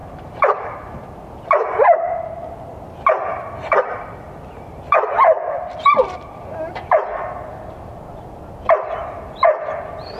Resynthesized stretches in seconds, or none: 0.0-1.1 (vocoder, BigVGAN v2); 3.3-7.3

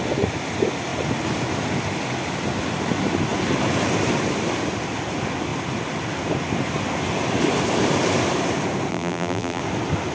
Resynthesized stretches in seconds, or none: 8.9-9.6 (vocoder, BigVGAN v2)

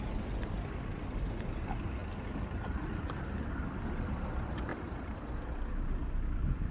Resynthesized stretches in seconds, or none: 4.7-5.2 (vocoder, BigVGAN v2)

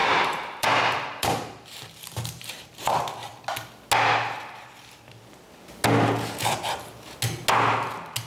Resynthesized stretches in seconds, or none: 0.0-2.6 (vocoder, BigVGAN v2)